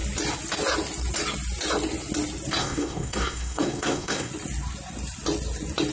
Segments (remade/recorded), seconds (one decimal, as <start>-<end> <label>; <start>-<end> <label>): 0.0-2.6 recorded; 2.6-4.3 remade; 4.3-5.9 recorded